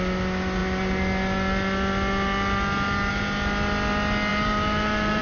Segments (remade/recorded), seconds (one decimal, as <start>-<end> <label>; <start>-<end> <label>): 0.0-4.3 recorded; 4.3-5.2 remade